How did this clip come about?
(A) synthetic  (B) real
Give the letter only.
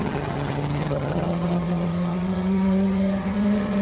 A